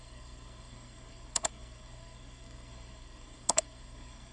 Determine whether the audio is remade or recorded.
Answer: remade